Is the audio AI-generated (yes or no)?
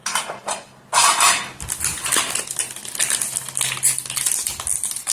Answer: no